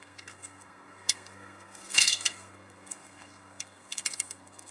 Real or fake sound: fake